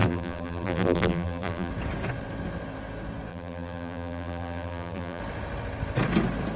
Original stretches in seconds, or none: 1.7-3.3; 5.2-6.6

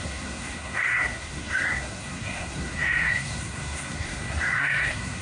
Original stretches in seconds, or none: none

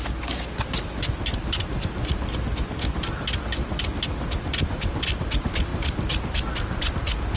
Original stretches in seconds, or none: 0.0-7.4